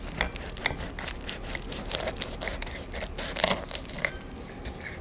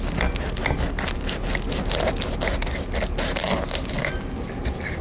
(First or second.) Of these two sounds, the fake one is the first